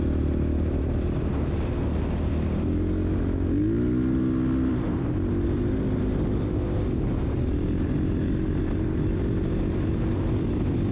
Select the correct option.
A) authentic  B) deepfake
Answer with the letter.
A